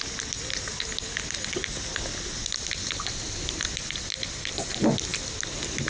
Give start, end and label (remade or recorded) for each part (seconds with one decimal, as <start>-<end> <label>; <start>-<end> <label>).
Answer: 0.0-5.9 recorded

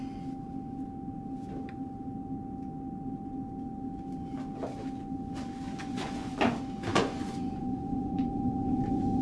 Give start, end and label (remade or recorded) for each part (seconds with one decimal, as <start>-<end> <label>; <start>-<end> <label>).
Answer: 0.0-5.8 recorded; 5.8-6.4 remade; 6.4-6.9 recorded; 6.9-9.2 remade

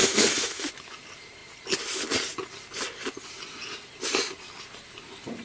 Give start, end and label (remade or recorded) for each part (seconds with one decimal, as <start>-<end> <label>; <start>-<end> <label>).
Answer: 0.0-0.7 remade; 0.7-5.4 recorded